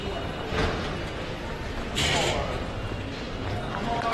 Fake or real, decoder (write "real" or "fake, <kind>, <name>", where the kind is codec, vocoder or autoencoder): real